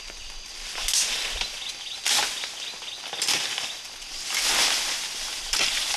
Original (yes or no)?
yes